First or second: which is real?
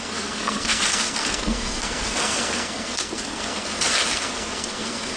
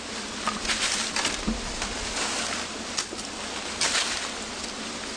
second